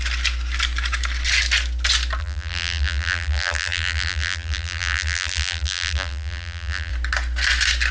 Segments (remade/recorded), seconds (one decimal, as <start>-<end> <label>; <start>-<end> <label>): 0.0-2.2 recorded; 2.2-6.9 remade; 6.9-7.9 recorded